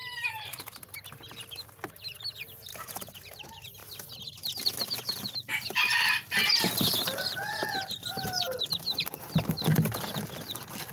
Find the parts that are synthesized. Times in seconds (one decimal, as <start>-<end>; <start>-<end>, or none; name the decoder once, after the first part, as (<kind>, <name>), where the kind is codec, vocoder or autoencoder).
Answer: 0.0-0.8 (vocoder, BigVGAN v2); 2.7-3.4